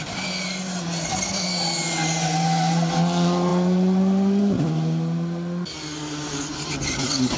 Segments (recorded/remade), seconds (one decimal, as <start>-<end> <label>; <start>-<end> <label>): 0.0-7.4 recorded